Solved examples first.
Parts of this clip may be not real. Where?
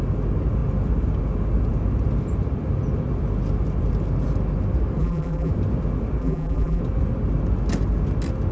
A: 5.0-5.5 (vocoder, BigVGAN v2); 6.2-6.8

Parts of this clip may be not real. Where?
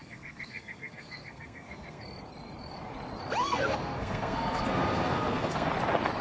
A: 0.0-2.0 (codec, SNAC); 3.4-5.7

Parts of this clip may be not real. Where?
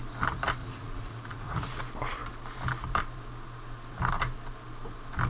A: 0.6-1.8 (vocoder, Vocos)